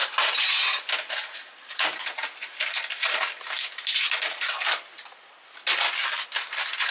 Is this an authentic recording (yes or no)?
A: yes